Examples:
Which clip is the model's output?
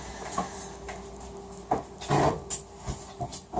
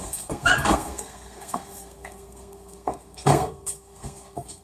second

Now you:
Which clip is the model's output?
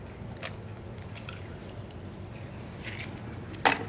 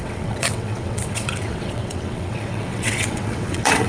second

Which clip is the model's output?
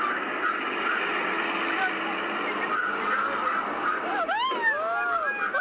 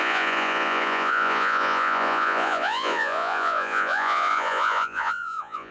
second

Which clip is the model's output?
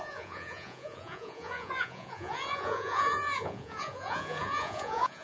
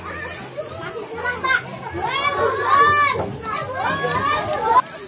first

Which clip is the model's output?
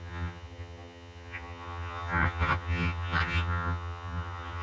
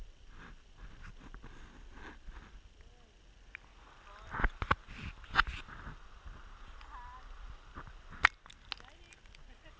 first